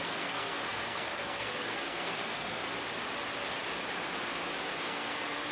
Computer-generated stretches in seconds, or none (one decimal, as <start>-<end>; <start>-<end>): 0.0-2.6; 4.7-5.5